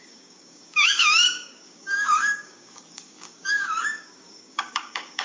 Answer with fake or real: fake